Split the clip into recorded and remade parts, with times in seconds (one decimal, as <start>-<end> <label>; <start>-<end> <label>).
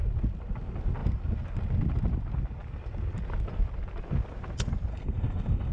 0.0-4.9 recorded; 4.9-5.7 remade